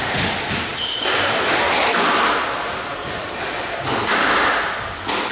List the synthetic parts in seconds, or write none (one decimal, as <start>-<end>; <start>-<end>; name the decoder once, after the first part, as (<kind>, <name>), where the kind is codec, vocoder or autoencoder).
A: none